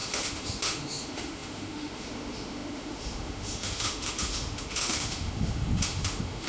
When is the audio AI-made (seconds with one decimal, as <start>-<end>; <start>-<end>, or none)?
0.0-6.5